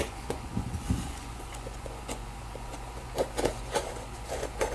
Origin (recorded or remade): remade